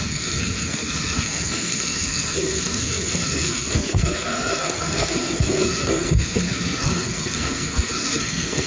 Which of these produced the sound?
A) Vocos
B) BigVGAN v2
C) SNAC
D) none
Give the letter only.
C